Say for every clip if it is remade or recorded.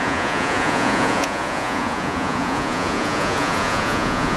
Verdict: remade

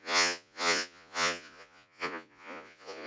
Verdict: remade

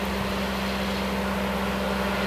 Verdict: recorded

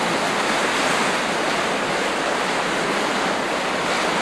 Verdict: recorded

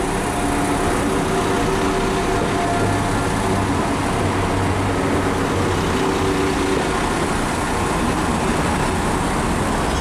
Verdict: recorded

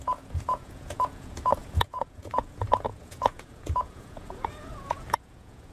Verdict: remade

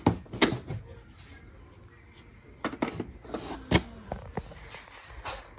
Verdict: recorded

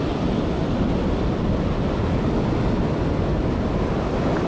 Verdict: recorded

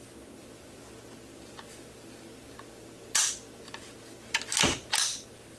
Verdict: recorded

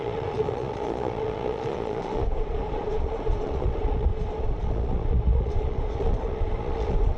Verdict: remade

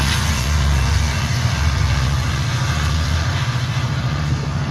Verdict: remade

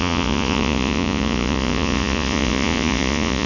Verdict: remade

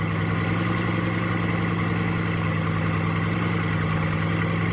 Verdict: recorded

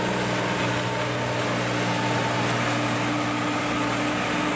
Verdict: recorded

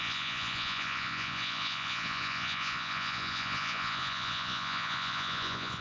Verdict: remade